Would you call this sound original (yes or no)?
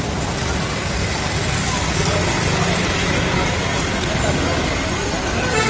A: yes